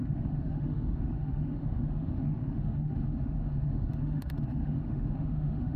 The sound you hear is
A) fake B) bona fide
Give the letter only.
A